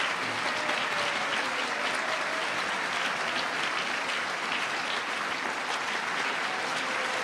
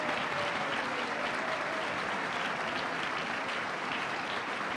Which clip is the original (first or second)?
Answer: first